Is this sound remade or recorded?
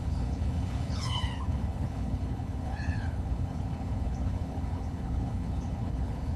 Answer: remade